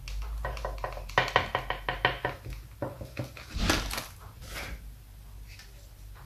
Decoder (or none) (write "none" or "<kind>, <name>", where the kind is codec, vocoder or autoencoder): none